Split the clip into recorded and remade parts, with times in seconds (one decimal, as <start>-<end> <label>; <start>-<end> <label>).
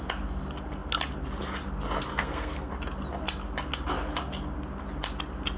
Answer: 0.0-2.1 recorded; 2.1-2.7 remade; 2.7-5.6 recorded